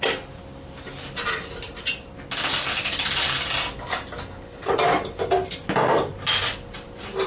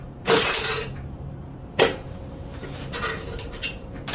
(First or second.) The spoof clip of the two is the second